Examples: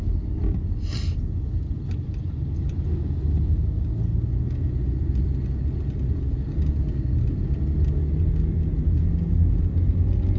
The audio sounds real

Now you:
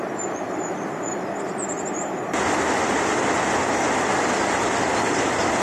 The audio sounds real